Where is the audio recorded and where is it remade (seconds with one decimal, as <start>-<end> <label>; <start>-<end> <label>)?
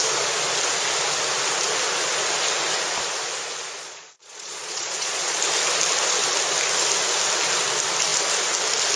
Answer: 0.0-3.8 recorded; 3.8-5.4 remade; 5.4-9.0 recorded